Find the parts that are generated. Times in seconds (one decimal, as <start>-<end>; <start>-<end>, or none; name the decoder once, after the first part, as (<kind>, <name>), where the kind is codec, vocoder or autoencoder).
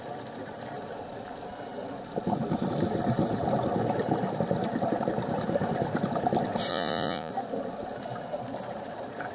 6.7-7.3 (vocoder, Vocos)